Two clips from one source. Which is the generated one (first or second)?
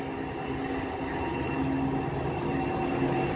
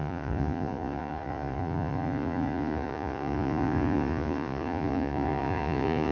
second